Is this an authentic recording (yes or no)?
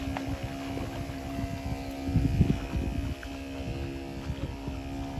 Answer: yes